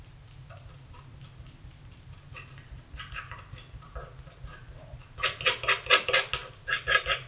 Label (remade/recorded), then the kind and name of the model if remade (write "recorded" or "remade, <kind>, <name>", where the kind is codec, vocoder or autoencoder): recorded